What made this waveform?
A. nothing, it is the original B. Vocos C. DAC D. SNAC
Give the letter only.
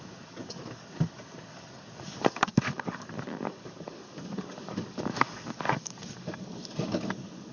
C